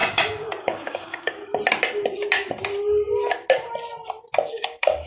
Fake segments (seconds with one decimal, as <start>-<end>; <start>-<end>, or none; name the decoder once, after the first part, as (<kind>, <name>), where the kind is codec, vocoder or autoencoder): 0.6-1.4 (codec, DAC); 4.5-5.1